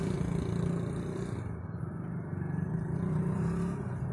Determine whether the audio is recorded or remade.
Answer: recorded